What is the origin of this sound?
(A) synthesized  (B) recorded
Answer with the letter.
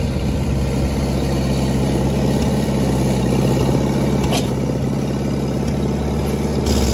B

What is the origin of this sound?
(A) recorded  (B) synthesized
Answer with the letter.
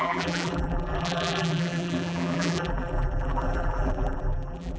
B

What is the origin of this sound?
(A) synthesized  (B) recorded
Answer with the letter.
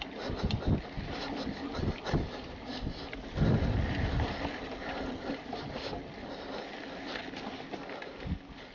B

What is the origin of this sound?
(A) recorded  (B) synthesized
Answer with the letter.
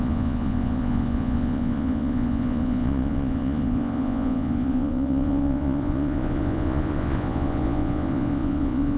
B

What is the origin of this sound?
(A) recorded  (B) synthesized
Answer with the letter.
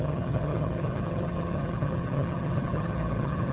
B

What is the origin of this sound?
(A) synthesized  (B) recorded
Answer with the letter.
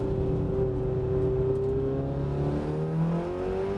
B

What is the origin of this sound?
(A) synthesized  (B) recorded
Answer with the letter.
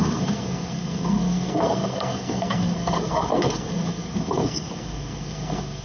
A